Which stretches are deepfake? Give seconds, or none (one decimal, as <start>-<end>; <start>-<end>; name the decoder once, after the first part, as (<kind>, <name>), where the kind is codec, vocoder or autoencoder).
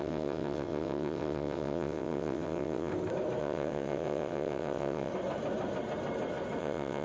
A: 0.0-2.9 (vocoder, WaveNeXt); 3.4-5.1; 6.6-7.0